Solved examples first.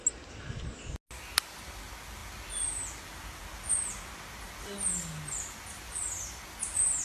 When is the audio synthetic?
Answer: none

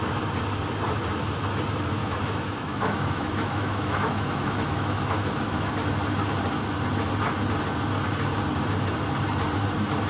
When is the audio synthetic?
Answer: 2.0-5.7 (autoencoder, DAC-VAE)